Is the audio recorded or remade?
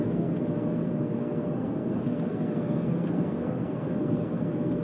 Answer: remade